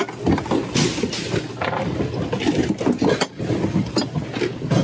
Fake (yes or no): no